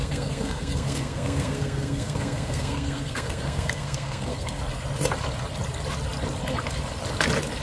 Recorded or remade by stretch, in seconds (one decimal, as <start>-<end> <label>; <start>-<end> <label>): 0.0-4.6 remade; 4.6-7.6 recorded